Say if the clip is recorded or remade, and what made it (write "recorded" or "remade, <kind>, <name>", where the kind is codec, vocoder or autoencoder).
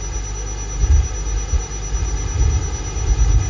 recorded